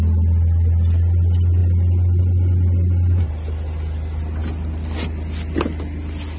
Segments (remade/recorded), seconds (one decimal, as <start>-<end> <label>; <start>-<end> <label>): 0.0-6.4 recorded